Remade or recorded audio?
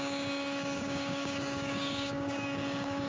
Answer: remade